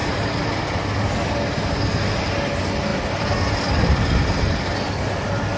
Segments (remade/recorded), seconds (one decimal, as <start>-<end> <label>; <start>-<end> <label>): 0.0-5.6 recorded